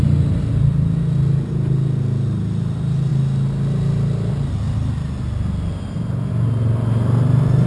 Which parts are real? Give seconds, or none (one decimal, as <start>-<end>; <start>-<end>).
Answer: 0.0-7.7